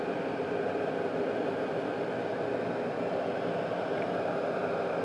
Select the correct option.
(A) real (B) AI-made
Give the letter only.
A